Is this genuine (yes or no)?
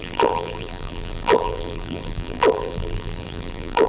no